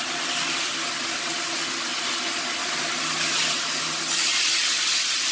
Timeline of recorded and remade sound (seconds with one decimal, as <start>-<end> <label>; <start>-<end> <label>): 0.0-5.3 recorded